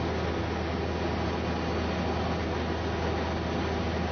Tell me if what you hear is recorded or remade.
recorded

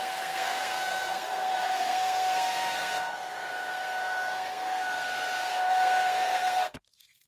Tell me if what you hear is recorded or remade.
remade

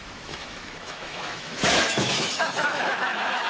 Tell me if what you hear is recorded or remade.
remade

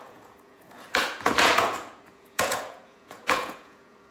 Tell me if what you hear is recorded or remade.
remade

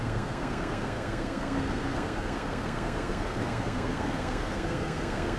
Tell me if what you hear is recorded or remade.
remade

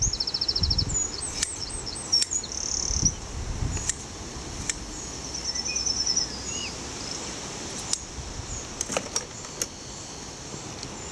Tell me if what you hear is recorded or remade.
recorded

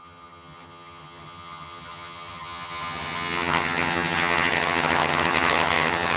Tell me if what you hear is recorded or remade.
remade